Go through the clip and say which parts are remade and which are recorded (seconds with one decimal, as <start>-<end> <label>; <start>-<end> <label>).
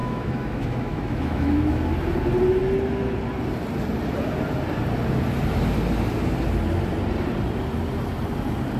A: 0.0-1.8 remade; 1.8-8.8 recorded